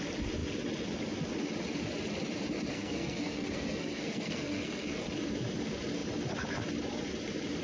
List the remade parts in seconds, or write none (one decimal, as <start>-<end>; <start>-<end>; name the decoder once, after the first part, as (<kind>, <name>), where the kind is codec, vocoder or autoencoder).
2.7-5.0 (codec, SNAC)